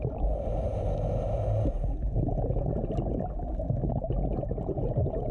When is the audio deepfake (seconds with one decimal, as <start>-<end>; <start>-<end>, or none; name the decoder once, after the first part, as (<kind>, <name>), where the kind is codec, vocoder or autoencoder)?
none